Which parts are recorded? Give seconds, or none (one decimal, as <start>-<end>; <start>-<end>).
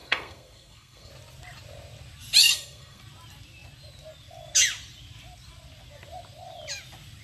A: 1.1-2.4; 3.0-7.2